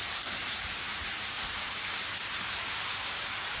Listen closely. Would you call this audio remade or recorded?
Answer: remade